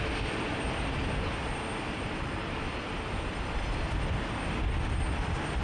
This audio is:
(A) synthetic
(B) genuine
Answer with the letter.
B